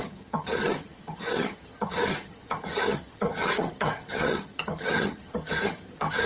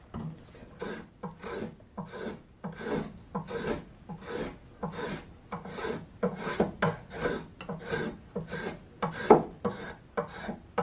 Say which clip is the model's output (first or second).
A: first